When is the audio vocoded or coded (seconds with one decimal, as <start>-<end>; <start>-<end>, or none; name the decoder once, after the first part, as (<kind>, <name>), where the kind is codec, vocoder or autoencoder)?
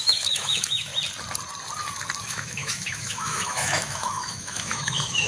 0.0-0.9 (autoencoder, DAC-VAE); 2.2-5.3